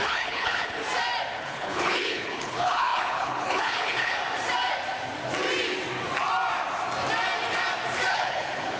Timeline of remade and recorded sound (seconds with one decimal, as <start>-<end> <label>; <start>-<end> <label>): 0.0-0.8 remade; 0.8-1.4 recorded; 1.4-4.2 remade; 4.2-8.1 recorded; 8.1-8.8 remade